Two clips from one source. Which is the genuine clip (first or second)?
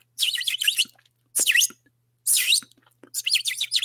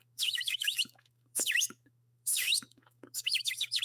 first